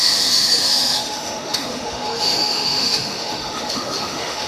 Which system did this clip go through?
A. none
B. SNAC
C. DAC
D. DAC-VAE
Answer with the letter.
D